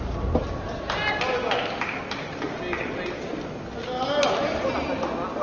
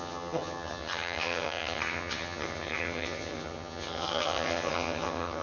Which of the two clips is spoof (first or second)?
second